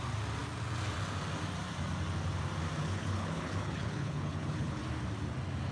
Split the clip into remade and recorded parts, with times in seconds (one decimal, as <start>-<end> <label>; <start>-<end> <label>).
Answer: 0.0-2.9 recorded; 2.9-4.8 remade; 4.8-5.7 recorded